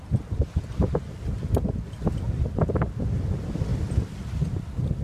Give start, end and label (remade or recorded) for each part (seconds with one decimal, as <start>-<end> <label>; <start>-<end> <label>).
0.0-5.0 recorded